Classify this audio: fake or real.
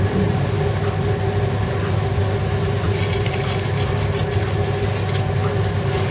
real